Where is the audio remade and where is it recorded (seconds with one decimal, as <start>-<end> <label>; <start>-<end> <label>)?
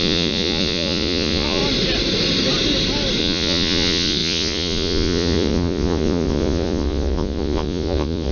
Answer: 0.0-1.6 remade; 1.6-3.2 recorded; 3.2-8.3 remade